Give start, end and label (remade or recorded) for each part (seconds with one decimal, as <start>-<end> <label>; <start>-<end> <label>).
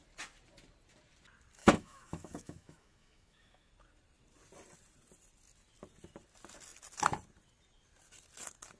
0.0-1.6 recorded; 1.6-3.7 remade; 3.7-8.8 recorded